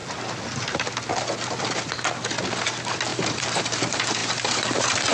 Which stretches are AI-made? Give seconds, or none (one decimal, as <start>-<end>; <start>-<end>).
3.1-3.8